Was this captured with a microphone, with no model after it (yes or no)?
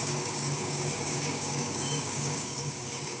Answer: no